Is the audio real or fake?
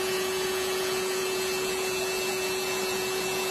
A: fake